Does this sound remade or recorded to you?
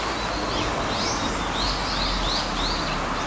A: recorded